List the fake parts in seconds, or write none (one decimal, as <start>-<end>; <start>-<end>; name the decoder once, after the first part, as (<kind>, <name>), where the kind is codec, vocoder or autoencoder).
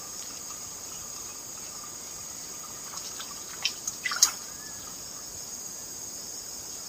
0.0-1.3 (vocoder, BigVGAN v2); 5.4-6.9